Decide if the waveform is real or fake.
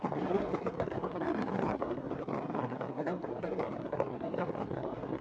fake